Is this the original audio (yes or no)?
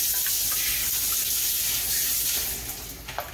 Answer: yes